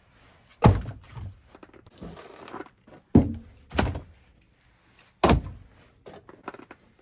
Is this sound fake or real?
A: real